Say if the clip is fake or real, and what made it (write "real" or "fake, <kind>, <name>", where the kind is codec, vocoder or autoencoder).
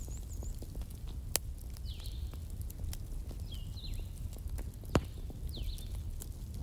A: real